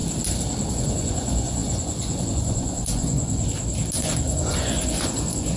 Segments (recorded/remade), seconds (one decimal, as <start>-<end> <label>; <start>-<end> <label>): 0.0-0.7 recorded; 0.7-3.4 remade; 3.4-4.0 recorded; 4.0-5.6 remade